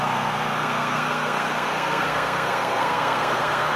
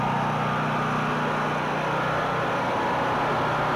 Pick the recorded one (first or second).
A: second